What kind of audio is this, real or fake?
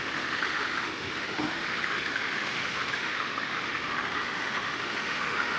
fake